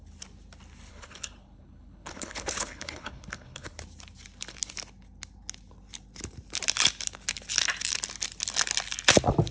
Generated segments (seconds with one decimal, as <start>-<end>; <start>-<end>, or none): 0.9-3.8